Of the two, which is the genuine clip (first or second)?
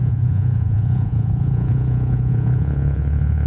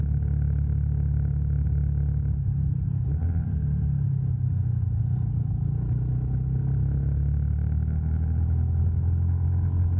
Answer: second